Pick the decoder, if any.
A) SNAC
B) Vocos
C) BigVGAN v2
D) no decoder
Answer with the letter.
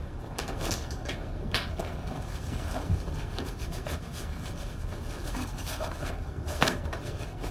A